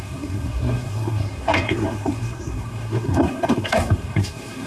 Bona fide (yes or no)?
no